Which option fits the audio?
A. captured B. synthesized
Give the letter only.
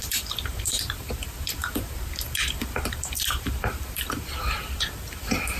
B